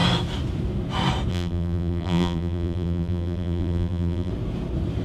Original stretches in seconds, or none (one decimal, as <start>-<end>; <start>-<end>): 0.0-1.3; 4.3-5.0